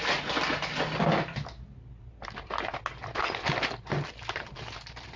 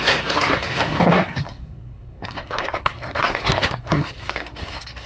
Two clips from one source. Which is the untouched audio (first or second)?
first